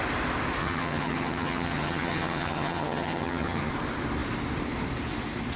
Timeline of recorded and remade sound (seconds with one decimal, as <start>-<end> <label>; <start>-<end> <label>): 0.0-0.6 recorded; 0.6-3.7 remade; 3.7-5.6 recorded